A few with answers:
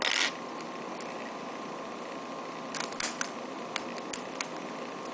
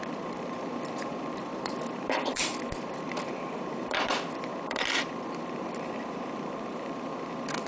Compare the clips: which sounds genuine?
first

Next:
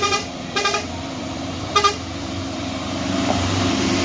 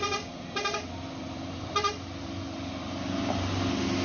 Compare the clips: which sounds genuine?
second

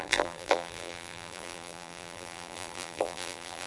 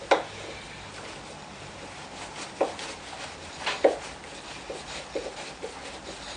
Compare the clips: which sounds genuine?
second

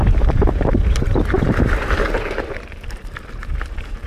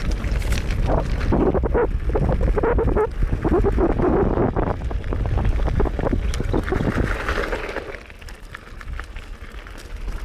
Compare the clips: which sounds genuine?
second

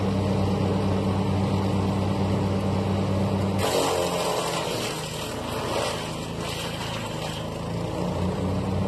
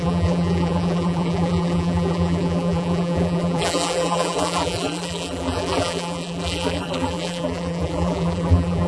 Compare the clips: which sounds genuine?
first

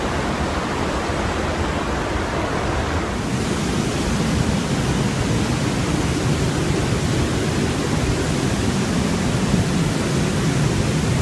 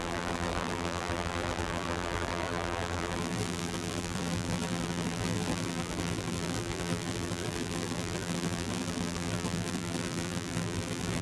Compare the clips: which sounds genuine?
first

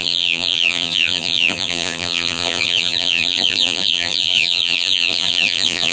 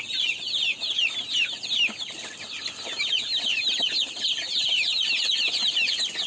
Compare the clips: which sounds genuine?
second